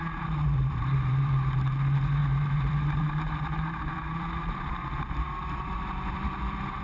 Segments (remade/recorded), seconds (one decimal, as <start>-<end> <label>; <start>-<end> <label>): 0.0-6.8 remade